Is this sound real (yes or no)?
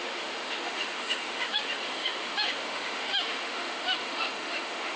no